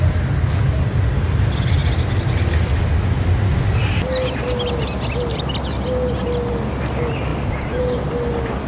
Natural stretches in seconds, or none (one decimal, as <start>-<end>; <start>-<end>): 0.0-8.7